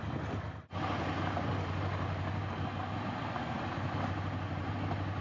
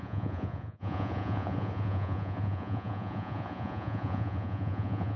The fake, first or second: second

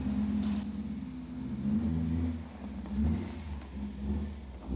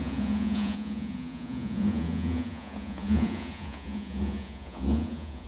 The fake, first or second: second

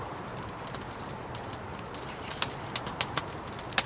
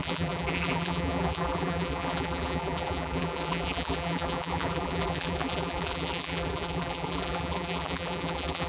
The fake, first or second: second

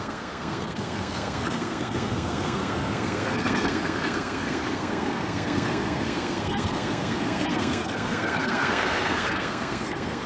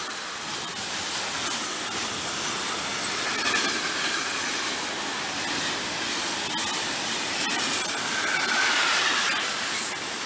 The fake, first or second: first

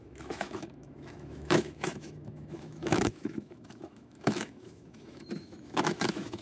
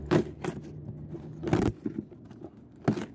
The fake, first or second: first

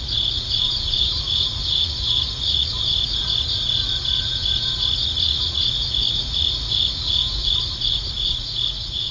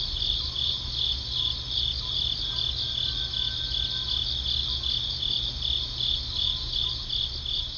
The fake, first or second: first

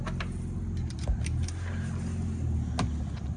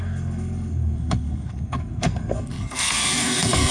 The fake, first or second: second